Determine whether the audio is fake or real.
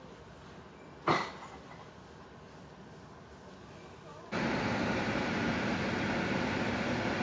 real